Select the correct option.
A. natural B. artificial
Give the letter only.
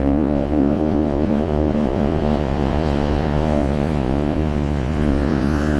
B